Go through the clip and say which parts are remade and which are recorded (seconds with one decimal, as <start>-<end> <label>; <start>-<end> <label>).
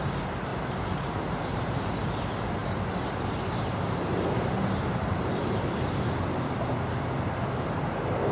0.0-0.5 recorded; 0.5-1.9 remade; 1.9-8.3 recorded